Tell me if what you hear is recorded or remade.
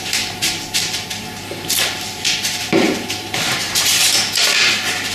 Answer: remade